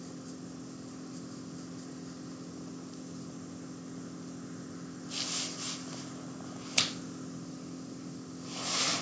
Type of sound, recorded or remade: recorded